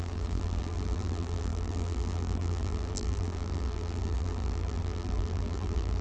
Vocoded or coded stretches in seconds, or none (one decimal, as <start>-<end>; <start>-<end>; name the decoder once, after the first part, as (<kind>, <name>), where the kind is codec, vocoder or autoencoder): 0.0-6.0 (vocoder, BigVGAN v2)